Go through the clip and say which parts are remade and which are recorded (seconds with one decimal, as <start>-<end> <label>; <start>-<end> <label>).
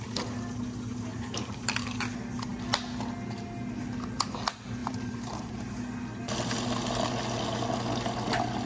0.0-1.1 recorded; 1.1-1.6 remade; 1.6-4.8 recorded; 4.8-5.7 remade; 5.7-8.7 recorded